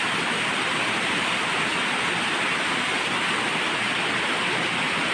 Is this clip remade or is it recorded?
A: recorded